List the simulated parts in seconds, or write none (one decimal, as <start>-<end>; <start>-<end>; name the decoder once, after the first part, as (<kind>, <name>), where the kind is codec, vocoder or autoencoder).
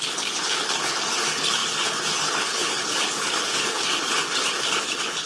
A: 0.0-5.3 (codec, HILCodec)